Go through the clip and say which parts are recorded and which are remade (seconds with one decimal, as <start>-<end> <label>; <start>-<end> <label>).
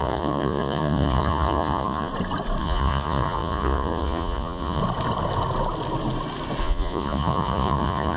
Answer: 0.0-2.1 remade; 2.1-2.6 recorded; 2.6-4.8 remade; 4.8-6.6 recorded; 6.6-8.2 remade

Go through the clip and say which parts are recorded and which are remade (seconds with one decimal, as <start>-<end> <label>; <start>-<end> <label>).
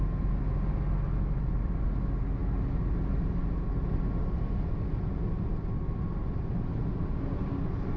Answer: 0.0-8.0 recorded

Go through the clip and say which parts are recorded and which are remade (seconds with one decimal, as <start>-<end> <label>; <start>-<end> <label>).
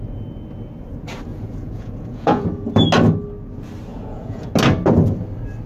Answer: 0.0-1.3 recorded; 1.3-2.7 remade; 2.7-3.9 recorded; 3.9-4.5 remade; 4.5-5.7 recorded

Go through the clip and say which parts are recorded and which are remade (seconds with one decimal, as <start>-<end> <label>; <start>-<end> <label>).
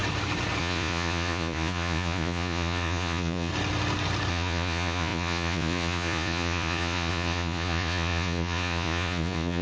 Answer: 0.0-0.6 recorded; 0.6-3.5 remade; 3.5-4.3 recorded; 4.3-9.6 remade